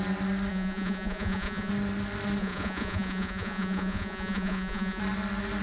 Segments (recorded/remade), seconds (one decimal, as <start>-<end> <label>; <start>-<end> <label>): 0.0-0.5 recorded; 0.5-1.7 remade; 1.7-2.4 recorded; 2.4-5.0 remade; 5.0-5.6 recorded

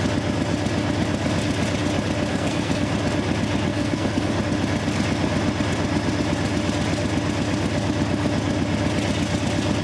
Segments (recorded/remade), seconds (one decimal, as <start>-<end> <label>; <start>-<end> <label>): 0.0-2.3 recorded; 2.3-2.9 remade; 2.9-3.7 recorded; 3.7-4.3 remade; 4.3-9.8 recorded

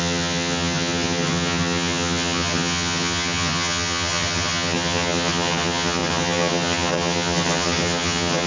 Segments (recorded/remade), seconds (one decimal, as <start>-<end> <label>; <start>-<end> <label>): 0.0-8.5 remade

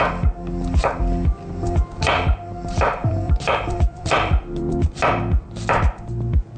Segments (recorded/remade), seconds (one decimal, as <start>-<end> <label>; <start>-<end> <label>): 0.0-3.0 recorded; 3.0-5.1 remade; 5.1-6.6 recorded

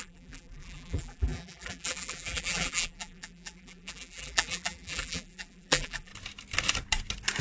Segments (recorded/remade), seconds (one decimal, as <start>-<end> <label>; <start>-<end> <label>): 0.0-6.1 remade; 6.1-7.4 recorded